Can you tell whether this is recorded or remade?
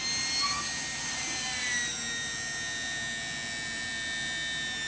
recorded